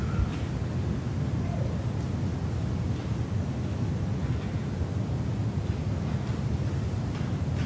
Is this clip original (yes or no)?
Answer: yes